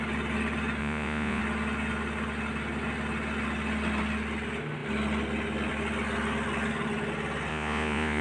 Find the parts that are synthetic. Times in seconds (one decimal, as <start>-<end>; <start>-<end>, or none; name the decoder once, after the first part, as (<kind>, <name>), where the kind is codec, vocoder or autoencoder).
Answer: 0.8-1.4 (vocoder, Vocos); 7.5-8.2